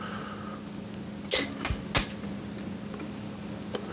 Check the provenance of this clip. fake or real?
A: real